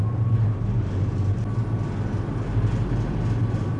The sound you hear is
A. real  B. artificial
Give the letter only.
A